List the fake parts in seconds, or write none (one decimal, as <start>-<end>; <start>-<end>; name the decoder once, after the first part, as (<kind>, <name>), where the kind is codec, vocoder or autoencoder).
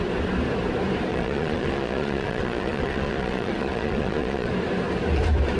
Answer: 1.1-4.5 (vocoder, Vocos)